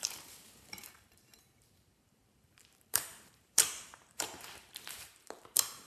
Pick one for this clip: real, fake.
fake